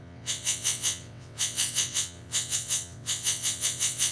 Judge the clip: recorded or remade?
remade